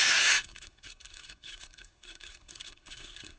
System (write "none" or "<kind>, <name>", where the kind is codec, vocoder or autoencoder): codec, SNAC